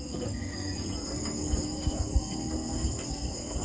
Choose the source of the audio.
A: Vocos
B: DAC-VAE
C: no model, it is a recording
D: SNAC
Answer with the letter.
D